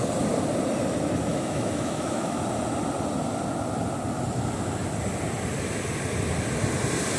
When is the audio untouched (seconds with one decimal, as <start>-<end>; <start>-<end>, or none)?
0.0-1.3; 2.4-7.2